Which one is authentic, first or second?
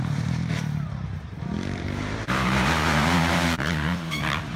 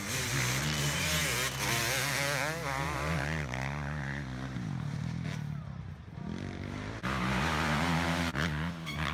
second